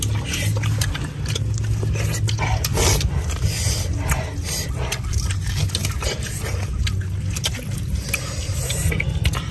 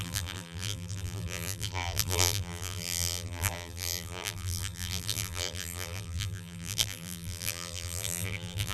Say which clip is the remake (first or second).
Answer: second